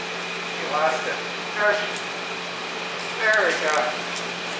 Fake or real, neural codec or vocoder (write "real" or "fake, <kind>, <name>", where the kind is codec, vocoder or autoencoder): real